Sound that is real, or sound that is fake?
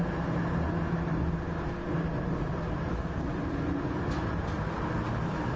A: real